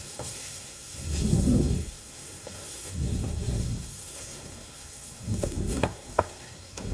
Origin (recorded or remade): remade